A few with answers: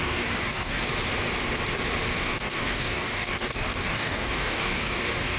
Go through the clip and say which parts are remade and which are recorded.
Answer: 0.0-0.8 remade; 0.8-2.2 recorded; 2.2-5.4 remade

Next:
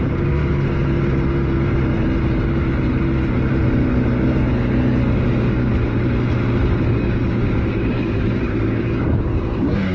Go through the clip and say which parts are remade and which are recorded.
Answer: 0.0-0.4 remade; 0.4-5.3 recorded; 5.3-5.7 remade; 5.7-6.9 recorded; 6.9-9.9 remade

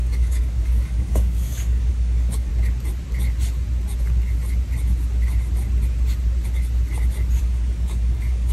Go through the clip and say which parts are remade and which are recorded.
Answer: 0.0-2.5 remade; 2.5-7.4 recorded; 7.4-8.5 remade

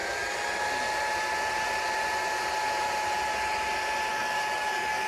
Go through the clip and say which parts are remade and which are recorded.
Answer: 0.0-4.1 recorded; 4.1-5.1 remade

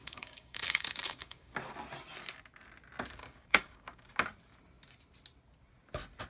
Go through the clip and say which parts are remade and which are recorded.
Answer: 0.0-1.5 remade; 1.5-3.2 recorded; 3.2-4.1 remade; 4.1-6.3 recorded

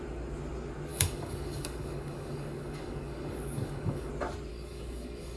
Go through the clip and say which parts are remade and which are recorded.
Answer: 0.0-0.9 recorded; 0.9-4.1 remade; 4.1-4.5 recorded; 4.5-5.4 remade

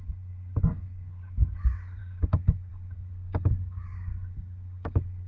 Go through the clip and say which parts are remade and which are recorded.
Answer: 0.0-5.3 remade